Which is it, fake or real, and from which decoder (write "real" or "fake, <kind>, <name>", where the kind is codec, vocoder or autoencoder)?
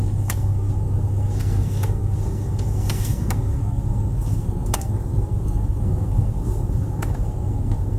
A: fake, codec, SNAC